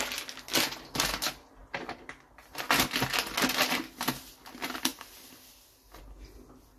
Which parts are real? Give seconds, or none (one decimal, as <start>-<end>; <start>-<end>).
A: 0.0-6.8